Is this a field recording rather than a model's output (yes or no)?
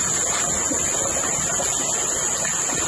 yes